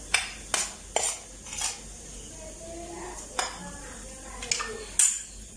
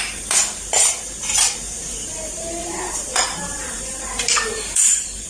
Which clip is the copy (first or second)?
second